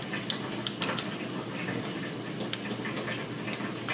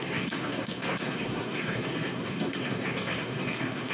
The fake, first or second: second